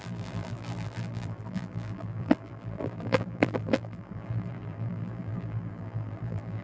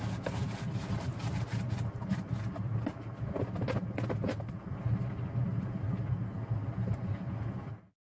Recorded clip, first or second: second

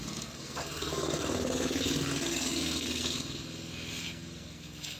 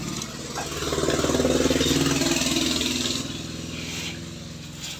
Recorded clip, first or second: second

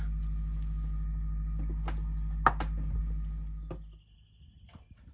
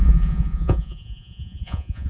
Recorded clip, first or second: first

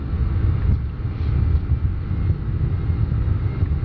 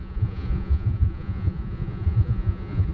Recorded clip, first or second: first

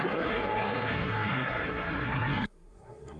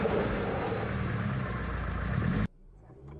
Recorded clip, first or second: second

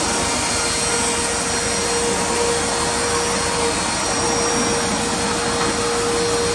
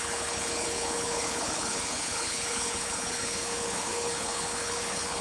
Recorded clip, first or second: first